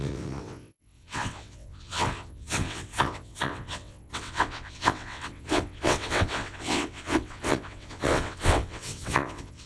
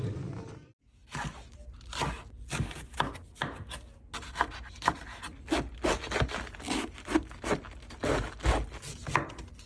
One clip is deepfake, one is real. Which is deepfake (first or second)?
first